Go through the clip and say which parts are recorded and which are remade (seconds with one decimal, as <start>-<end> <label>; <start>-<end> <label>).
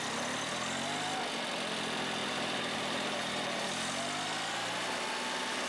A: 0.0-2.2 recorded; 2.2-3.9 remade; 3.9-5.7 recorded